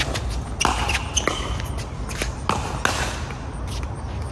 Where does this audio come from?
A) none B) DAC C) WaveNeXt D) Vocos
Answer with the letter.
A